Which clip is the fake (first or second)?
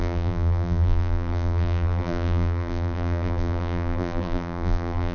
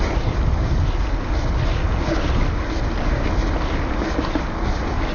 first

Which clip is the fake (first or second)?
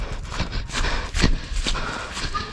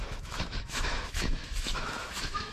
second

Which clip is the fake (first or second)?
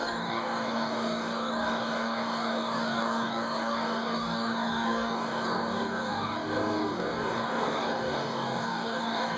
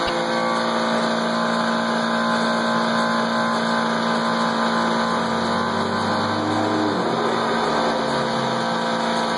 first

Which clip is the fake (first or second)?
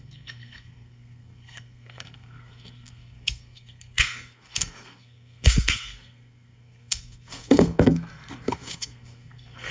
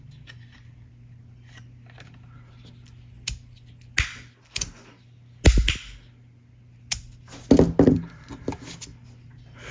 first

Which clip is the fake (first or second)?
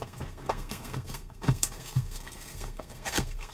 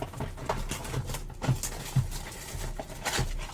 first